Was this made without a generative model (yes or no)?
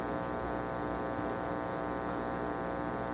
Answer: yes